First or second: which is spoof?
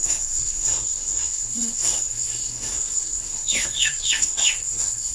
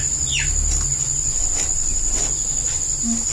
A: first